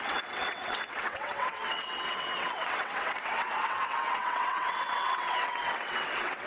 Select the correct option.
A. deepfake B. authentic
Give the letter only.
A